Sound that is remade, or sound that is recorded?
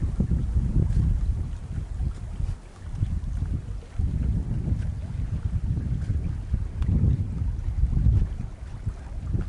recorded